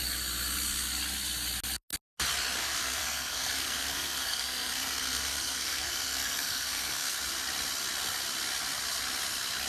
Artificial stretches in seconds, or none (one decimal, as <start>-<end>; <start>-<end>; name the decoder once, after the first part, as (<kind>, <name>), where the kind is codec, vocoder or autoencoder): 2.6-7.2 (codec, SNAC)